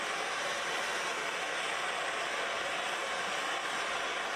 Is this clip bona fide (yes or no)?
yes